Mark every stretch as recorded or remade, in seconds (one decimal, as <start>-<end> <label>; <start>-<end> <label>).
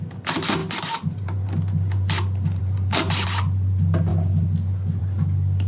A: 0.0-5.7 recorded